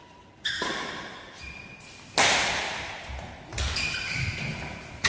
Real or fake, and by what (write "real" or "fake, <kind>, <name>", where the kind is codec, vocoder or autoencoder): real